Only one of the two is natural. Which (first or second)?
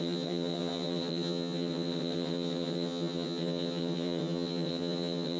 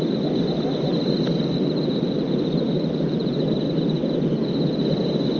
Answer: second